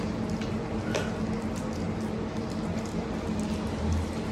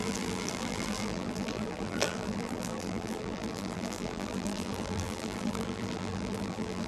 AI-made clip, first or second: second